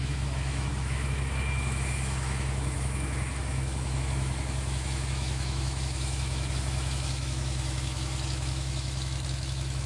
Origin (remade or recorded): remade